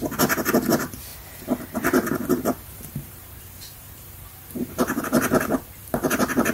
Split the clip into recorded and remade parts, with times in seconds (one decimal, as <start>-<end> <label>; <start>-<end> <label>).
0.0-1.1 recorded; 1.1-5.0 remade; 5.0-5.8 recorded; 5.8-6.5 remade